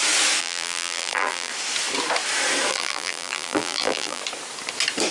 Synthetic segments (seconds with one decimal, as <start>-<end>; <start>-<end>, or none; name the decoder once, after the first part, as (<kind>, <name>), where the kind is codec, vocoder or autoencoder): 0.4-1.5 (vocoder, BigVGAN v2); 2.7-4.2